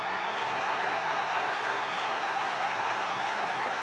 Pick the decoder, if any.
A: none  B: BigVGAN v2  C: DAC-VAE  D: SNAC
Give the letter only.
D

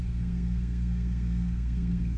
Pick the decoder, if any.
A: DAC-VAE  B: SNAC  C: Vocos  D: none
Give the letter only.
B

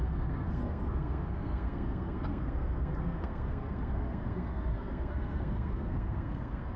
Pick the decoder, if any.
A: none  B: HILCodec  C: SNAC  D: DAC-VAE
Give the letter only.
C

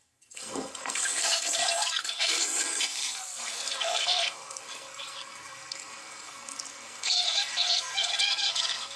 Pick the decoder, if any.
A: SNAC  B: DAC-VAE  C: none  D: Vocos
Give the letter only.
A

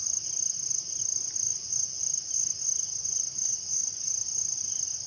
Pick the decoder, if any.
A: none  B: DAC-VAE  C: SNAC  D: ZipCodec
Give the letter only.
A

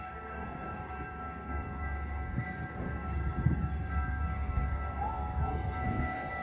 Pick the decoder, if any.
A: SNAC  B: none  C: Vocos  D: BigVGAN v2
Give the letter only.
A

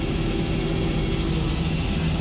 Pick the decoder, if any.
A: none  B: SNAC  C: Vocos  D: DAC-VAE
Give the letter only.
A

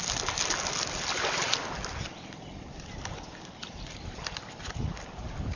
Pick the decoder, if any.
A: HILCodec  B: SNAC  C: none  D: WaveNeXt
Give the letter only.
C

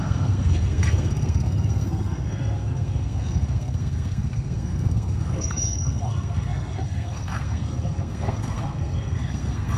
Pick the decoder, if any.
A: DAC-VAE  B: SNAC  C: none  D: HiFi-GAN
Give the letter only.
B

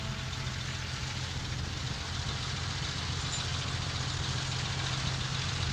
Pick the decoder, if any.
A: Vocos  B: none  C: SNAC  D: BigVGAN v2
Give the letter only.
B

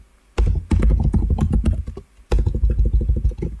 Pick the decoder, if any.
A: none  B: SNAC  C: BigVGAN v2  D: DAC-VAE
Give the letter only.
A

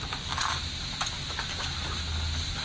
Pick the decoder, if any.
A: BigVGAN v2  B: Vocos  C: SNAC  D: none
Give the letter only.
D